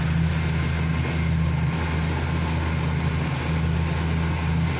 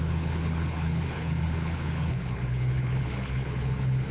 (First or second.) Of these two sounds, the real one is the first